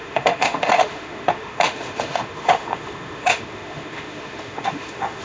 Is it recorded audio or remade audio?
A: remade